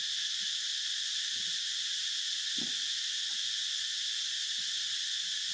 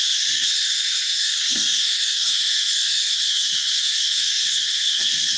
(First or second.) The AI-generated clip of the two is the second